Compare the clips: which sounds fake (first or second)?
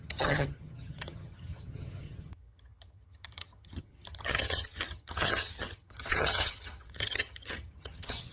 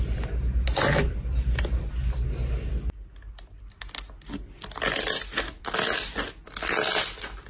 first